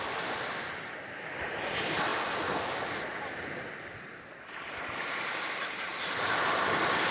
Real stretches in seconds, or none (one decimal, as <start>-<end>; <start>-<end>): 0.0-7.1